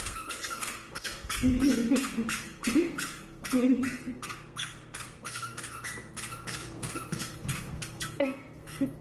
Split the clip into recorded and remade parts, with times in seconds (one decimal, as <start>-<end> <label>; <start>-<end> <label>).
0.0-9.0 remade